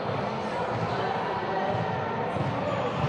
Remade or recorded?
recorded